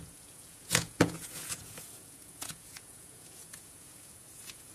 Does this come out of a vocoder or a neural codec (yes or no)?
yes